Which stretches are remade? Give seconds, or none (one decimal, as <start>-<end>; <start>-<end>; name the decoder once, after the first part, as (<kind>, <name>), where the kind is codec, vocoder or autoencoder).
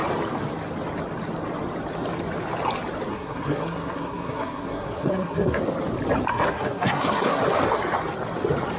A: 3.1-5.6 (codec, SNAC); 6.3-7.4